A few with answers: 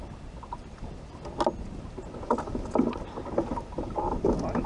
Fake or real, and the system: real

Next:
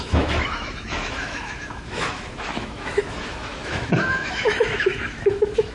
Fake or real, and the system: fake, autoencoder, DAC-VAE